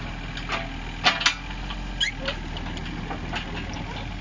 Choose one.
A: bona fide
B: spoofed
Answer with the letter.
A